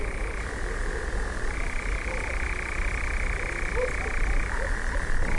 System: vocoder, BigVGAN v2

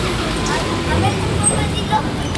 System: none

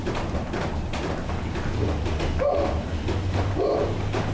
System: none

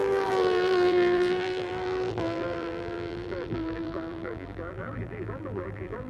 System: vocoder, BigVGAN v2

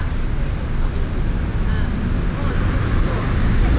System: none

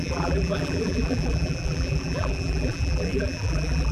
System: vocoder, BigVGAN v2